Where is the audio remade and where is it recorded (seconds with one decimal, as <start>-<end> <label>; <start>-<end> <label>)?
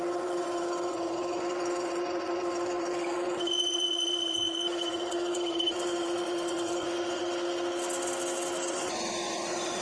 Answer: 0.0-7.2 remade; 7.2-8.7 recorded; 8.7-9.8 remade